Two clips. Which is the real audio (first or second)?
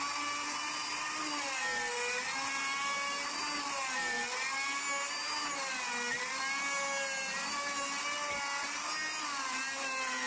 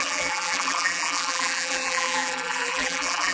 first